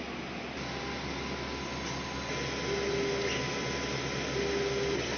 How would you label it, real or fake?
real